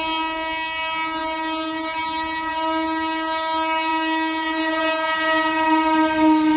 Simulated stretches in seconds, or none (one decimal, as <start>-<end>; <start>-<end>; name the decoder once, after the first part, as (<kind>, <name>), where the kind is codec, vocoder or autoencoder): none